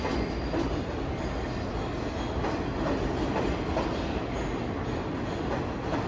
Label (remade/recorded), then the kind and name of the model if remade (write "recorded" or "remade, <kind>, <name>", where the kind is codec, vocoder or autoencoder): recorded